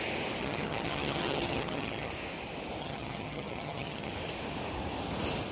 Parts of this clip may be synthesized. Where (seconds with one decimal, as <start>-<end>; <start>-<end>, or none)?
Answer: 0.4-2.1; 2.8-4.1

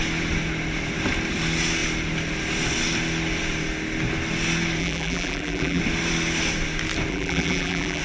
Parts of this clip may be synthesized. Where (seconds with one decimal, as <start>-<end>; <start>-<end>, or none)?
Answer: 4.8-5.8; 7.1-8.0

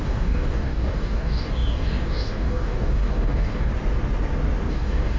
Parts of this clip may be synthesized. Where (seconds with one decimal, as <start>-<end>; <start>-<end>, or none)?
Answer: 0.0-3.7; 4.7-5.2

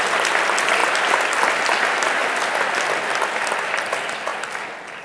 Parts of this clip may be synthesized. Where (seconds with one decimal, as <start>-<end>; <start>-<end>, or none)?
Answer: none

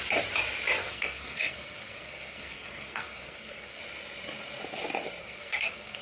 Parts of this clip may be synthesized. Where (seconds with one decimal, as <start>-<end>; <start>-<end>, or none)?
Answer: 0.8-3.8; 5.2-6.0

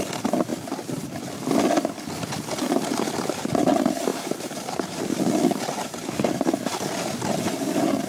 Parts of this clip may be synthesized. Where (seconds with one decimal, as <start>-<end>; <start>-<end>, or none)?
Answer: 4.1-5.0